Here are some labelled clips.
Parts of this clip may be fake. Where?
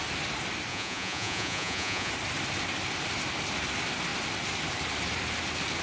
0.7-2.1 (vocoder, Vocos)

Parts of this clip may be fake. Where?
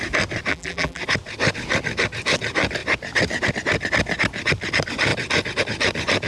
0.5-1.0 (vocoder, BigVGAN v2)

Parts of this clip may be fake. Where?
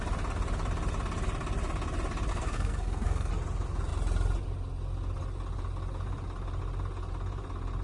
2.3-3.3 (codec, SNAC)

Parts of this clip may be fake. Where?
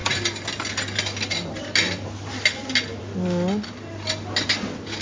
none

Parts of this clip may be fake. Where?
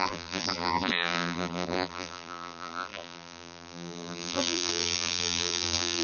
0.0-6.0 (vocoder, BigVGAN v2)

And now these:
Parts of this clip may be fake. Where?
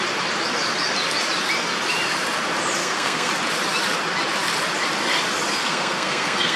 2.8-3.3 (codec, SNAC); 5.5-6.6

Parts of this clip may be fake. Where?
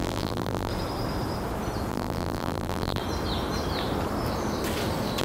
0.0-0.7 (vocoder, BigVGAN v2); 1.9-3.0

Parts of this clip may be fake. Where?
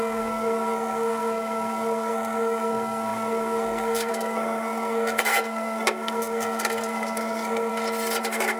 0.0-7.7 (codec, SNAC); 8.2-8.6